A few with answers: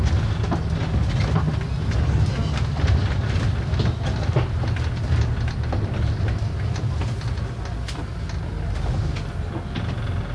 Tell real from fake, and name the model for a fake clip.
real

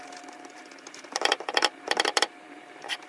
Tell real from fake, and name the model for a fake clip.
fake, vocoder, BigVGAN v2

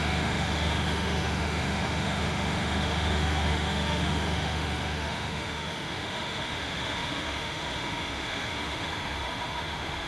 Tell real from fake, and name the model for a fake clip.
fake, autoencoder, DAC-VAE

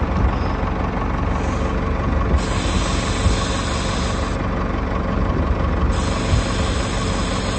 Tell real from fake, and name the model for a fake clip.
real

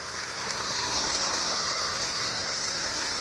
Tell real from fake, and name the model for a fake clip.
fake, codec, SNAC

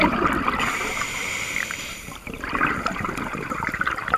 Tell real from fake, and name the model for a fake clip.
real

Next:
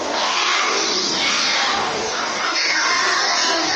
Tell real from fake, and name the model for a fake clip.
fake, codec, DAC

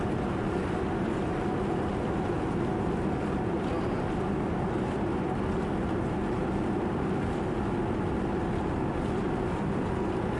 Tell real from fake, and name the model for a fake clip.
real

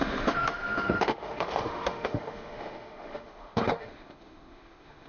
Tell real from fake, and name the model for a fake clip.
fake, autoencoder, DAC-VAE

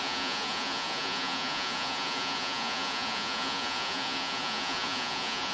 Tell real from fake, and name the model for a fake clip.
fake, vocoder, Vocos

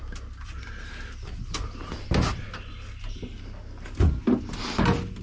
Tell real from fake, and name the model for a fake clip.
real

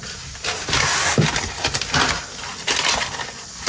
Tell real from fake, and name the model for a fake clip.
real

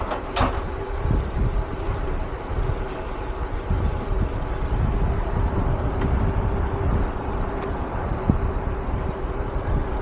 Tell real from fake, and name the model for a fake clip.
real